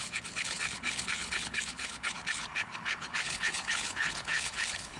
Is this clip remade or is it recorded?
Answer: remade